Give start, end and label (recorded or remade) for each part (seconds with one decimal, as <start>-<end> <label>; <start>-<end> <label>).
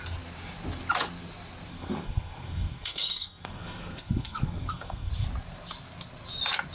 0.0-1.7 recorded; 1.7-5.1 remade; 5.1-6.7 recorded